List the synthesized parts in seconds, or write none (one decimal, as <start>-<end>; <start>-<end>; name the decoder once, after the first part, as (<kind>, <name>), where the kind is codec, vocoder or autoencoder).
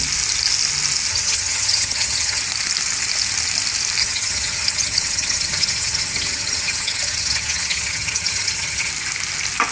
1.1-2.4 (vocoder, HiFi-GAN); 4.0-8.9